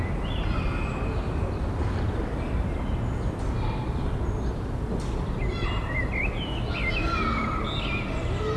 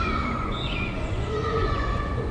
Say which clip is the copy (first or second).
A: second